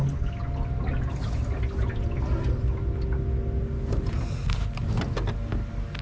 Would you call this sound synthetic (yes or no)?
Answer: no